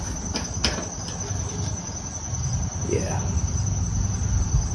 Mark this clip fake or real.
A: real